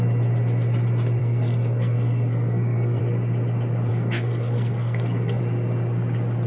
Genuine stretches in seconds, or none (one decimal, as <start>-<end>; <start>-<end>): 0.0-1.2; 3.0-3.9; 5.4-6.5